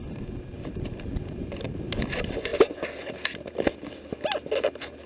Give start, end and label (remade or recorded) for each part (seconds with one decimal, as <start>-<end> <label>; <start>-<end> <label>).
0.0-5.1 recorded